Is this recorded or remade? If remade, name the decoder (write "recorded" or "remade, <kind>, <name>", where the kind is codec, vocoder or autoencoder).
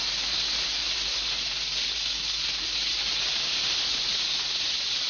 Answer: recorded